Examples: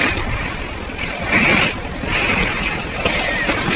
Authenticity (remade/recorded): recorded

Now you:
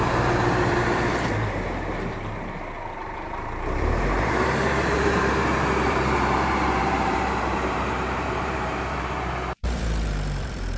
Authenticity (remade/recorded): remade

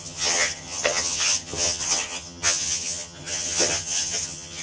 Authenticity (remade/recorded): remade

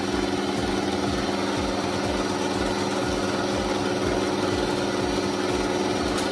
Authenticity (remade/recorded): recorded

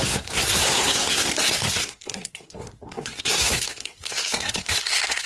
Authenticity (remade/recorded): remade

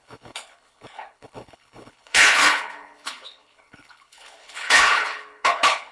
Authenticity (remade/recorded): remade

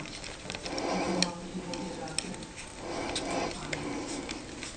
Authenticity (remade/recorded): recorded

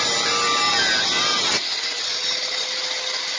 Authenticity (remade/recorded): recorded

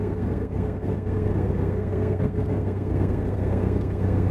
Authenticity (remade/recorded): remade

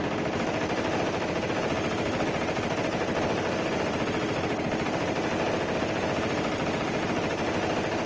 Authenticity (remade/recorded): recorded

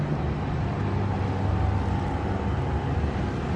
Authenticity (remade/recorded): recorded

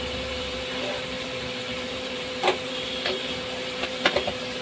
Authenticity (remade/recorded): remade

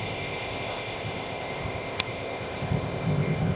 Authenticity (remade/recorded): remade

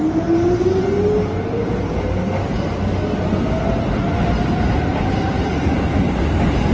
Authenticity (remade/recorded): recorded